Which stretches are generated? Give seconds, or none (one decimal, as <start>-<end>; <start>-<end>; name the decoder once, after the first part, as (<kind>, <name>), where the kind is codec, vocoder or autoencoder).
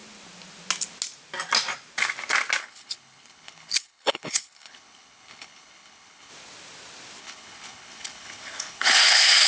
2.6-6.3 (codec, HILCodec); 7.2-9.5